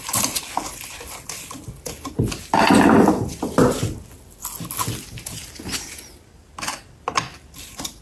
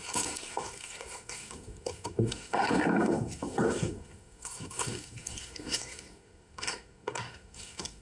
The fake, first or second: second